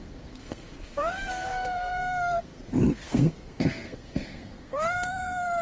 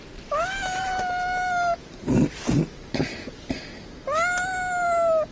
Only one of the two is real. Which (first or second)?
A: second